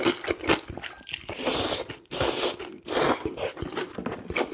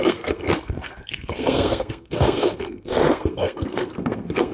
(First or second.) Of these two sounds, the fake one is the second